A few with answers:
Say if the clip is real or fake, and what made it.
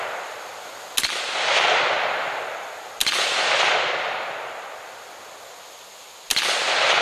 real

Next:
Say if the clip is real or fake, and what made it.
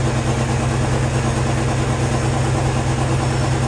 real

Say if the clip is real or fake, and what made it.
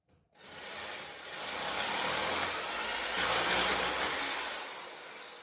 real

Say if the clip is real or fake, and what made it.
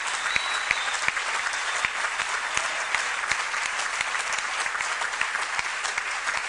real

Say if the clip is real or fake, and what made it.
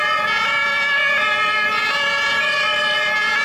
real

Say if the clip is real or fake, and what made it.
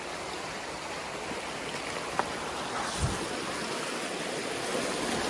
real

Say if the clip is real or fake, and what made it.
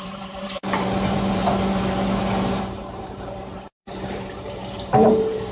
fake, vocoder, BigVGAN v2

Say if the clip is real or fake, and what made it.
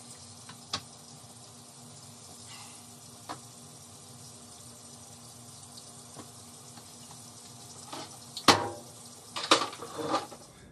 real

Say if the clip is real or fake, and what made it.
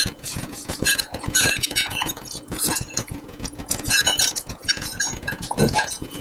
fake, vocoder, Vocos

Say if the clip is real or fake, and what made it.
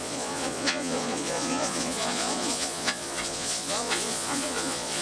fake, vocoder, Vocos